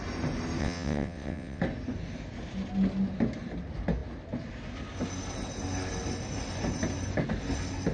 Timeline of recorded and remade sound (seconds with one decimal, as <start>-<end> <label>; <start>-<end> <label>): 0.0-0.6 recorded; 0.6-1.6 remade; 1.6-7.9 recorded